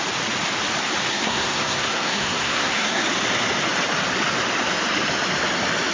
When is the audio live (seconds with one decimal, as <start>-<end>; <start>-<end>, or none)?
0.0-1.1; 3.0-5.9